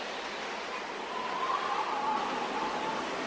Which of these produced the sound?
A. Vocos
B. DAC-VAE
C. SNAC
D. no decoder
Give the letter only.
D